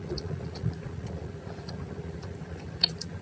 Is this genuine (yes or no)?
no